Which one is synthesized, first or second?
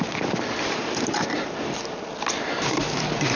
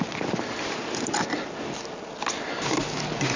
first